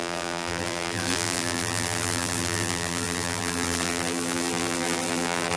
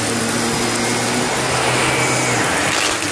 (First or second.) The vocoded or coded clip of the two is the first